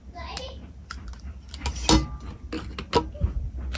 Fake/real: real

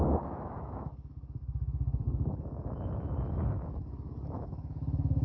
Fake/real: fake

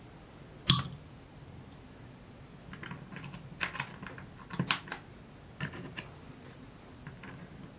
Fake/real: real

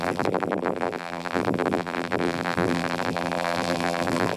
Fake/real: fake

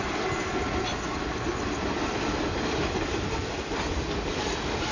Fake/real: fake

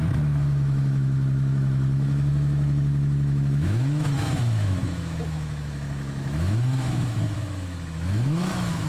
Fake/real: fake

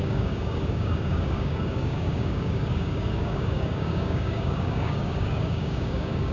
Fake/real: fake